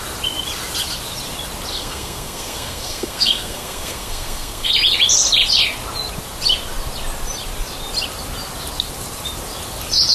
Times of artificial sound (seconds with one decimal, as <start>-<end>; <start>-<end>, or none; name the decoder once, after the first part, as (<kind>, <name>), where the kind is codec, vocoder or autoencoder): 1.7-4.7 (codec, SNAC)